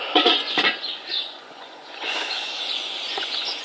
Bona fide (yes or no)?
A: no